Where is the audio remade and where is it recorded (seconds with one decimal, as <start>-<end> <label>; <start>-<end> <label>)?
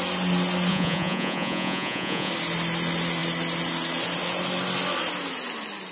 0.0-0.7 recorded; 0.7-2.3 remade; 2.3-5.9 recorded